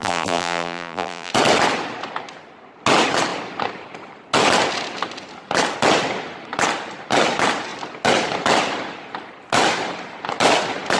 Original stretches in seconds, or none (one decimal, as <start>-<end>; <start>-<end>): 1.3-11.0